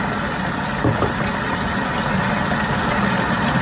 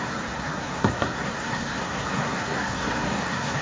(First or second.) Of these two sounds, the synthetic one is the second